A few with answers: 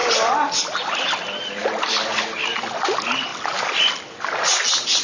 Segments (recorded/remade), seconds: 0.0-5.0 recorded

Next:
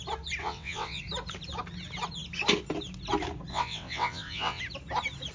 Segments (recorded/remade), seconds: 0.0-0.4 recorded; 0.4-1.0 remade; 1.0-3.5 recorded; 3.5-4.6 remade; 4.6-5.3 recorded

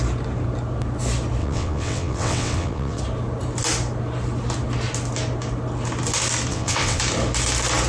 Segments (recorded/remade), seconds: 0.0-1.4 recorded; 1.4-3.0 remade; 3.0-6.5 recorded; 6.5-7.0 remade; 7.0-7.9 recorded

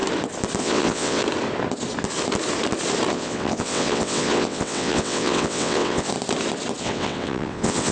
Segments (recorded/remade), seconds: 0.0-0.6 recorded; 0.6-1.2 remade; 1.2-3.1 recorded; 3.1-6.1 remade; 6.1-6.8 recorded; 6.8-7.9 remade

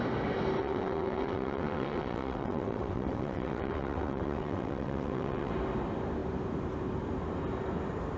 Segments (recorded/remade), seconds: 0.0-0.6 recorded; 0.6-5.5 remade; 5.5-8.2 recorded

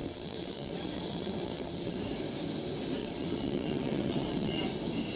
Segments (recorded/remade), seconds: 0.0-2.0 remade; 2.0-3.0 recorded; 3.0-4.6 remade; 4.6-5.2 recorded